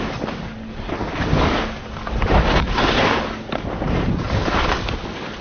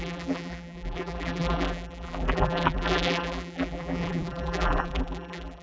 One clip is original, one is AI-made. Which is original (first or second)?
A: first